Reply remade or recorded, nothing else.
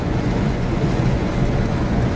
remade